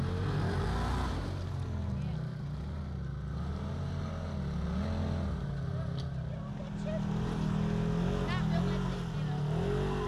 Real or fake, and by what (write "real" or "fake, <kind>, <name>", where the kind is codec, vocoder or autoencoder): real